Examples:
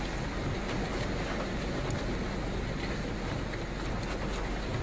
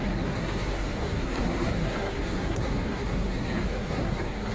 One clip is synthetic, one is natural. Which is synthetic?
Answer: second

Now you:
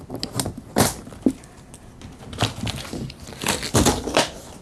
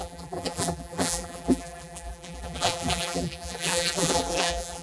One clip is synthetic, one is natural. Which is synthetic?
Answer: second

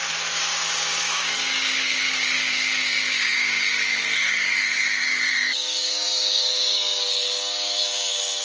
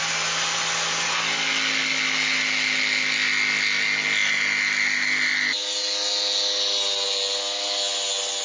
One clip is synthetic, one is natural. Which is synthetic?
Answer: first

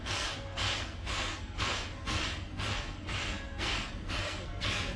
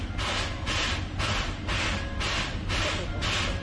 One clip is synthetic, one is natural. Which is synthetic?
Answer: first